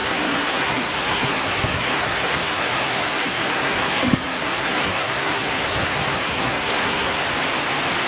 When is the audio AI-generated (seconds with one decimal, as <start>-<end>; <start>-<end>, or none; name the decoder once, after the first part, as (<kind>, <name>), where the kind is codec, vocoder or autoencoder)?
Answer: 0.0-7.2 (codec, SNAC)

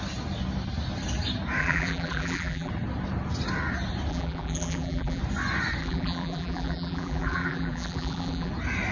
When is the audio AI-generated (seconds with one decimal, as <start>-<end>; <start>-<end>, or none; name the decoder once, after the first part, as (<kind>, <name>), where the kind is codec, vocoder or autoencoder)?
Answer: 1.6-2.7 (vocoder, BigVGAN v2); 4.1-5.2; 5.8-8.5

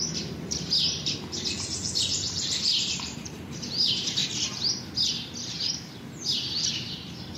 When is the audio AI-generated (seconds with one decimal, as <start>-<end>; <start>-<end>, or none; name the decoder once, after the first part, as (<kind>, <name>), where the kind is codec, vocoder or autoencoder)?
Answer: 0.0-4.2 (vocoder, BigVGAN v2); 6.9-7.4

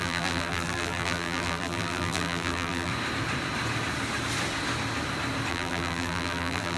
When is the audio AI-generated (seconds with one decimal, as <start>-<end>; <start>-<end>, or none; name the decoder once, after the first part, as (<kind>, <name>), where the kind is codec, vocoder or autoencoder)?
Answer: 0.0-2.9 (vocoder, BigVGAN v2); 5.5-6.8